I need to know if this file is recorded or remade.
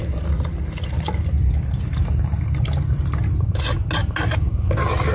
recorded